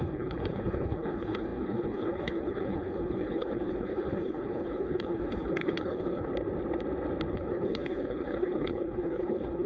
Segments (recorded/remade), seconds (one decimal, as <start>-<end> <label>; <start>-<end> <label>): 0.0-6.3 remade; 6.3-7.3 recorded; 7.3-9.7 remade